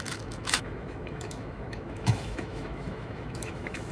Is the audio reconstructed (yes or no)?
yes